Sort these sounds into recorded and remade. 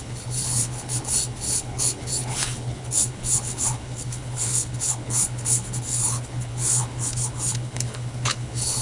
remade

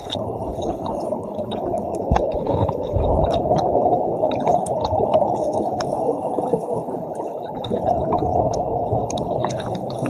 remade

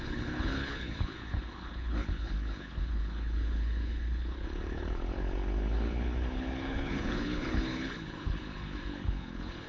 remade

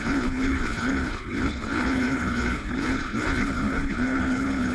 remade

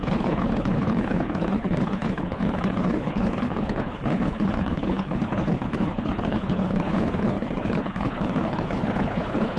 remade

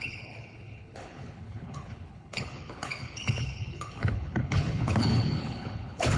remade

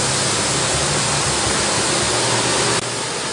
recorded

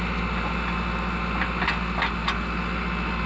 recorded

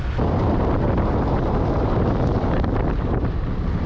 recorded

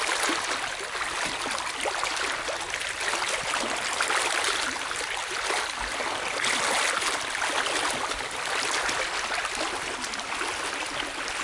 recorded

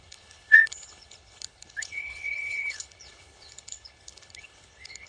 remade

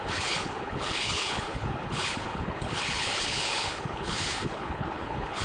remade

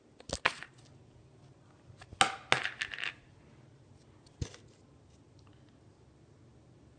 recorded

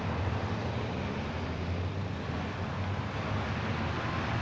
recorded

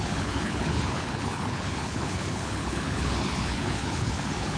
remade